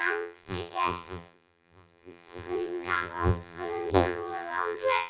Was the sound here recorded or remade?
remade